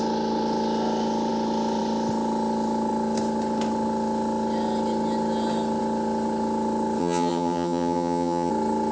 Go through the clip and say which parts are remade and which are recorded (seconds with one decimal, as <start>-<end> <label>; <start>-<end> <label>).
0.0-7.0 recorded; 7.0-8.5 remade; 8.5-8.9 recorded